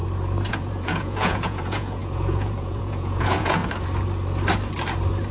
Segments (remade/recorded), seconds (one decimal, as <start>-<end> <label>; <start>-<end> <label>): 0.0-0.5 recorded; 0.5-3.6 remade; 3.6-5.3 recorded